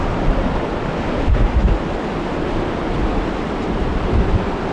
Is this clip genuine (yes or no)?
no